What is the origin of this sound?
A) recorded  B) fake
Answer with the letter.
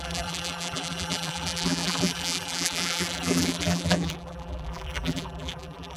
B